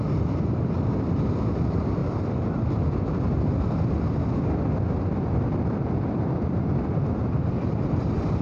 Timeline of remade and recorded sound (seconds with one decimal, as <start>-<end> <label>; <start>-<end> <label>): 0.0-8.4 recorded